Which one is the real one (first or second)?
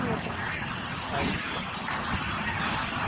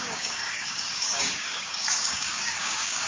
first